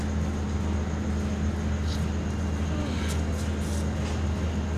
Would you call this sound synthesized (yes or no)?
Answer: no